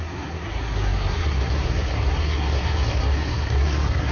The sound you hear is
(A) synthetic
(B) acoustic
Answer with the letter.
A